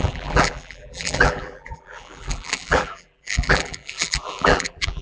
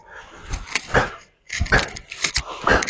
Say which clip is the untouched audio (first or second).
second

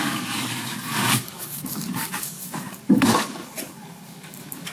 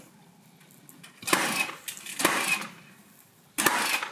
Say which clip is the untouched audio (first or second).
second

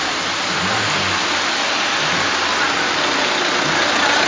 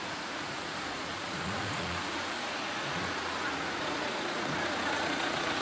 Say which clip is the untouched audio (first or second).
first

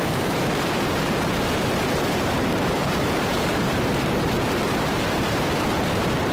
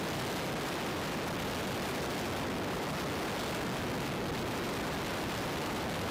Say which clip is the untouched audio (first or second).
second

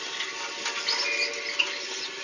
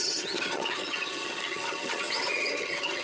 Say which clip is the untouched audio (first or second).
first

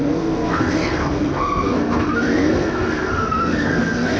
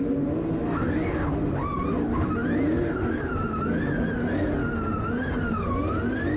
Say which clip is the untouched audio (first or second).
second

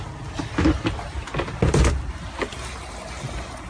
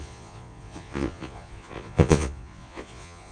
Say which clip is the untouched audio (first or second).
first